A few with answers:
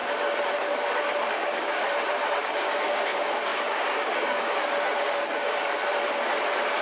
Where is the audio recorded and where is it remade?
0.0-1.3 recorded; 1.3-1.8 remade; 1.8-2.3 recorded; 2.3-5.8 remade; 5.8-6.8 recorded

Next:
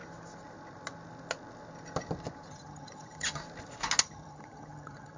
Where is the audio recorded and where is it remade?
0.0-2.5 recorded; 2.5-3.4 remade; 3.4-4.0 recorded; 4.0-5.2 remade

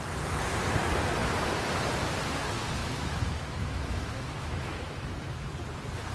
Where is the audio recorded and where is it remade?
0.0-2.8 recorded; 2.8-5.5 remade; 5.5-6.1 recorded

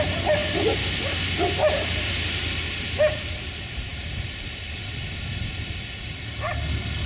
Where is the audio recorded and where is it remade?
0.0-7.1 recorded

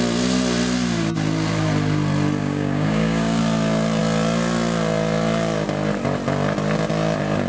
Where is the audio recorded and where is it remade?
0.0-2.4 recorded; 2.4-3.4 remade; 3.4-7.5 recorded

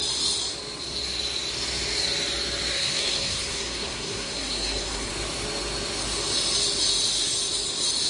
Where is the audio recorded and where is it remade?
0.0-2.7 recorded; 2.7-5.1 remade; 5.1-8.1 recorded

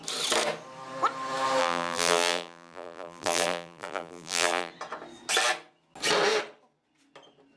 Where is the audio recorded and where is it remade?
0.0-1.6 recorded; 1.6-4.7 remade; 4.7-7.6 recorded

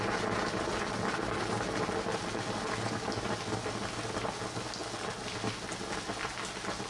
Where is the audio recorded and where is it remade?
0.0-6.9 recorded